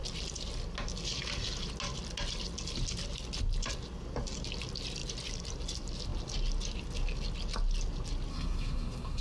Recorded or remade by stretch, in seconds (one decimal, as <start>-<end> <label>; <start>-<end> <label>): 0.0-8.3 recorded; 8.3-9.2 remade